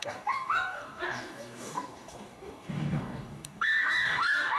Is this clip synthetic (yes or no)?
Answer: yes